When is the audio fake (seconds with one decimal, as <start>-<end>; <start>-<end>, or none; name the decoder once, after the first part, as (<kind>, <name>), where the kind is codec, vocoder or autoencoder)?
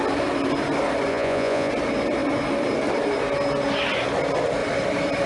1.1-1.7 (vocoder, Vocos)